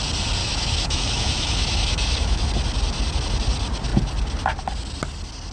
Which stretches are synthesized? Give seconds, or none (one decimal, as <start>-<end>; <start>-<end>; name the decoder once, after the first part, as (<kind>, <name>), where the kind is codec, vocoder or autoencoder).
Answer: 0.4-2.5 (autoencoder, DAC-VAE)